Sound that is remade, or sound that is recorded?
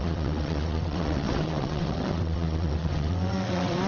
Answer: remade